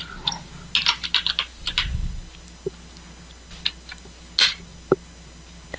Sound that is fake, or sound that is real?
real